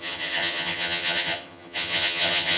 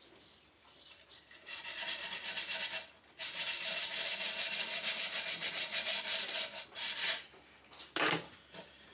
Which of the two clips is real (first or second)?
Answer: second